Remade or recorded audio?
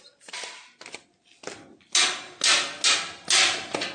recorded